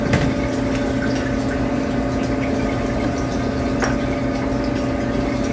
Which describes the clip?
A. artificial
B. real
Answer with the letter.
B